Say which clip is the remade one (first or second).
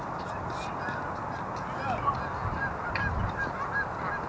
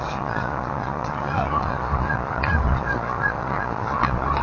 second